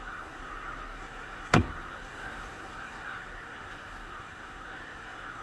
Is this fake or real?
fake